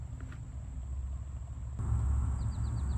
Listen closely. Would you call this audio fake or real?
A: real